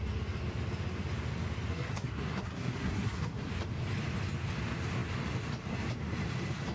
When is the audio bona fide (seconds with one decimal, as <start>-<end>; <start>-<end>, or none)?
0.0-1.7; 3.5-6.7